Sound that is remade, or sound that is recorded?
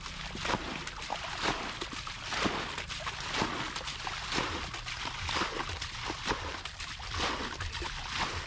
recorded